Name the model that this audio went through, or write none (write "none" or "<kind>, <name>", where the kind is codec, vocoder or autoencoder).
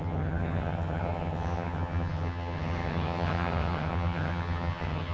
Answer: vocoder, HiFi-GAN